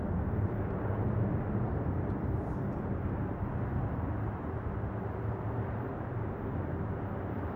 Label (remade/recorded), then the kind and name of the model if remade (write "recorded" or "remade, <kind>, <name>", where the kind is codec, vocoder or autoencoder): recorded